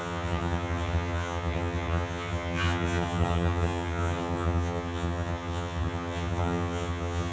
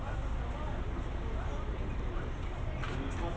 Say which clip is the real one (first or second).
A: second